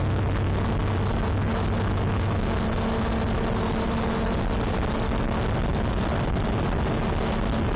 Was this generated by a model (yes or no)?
no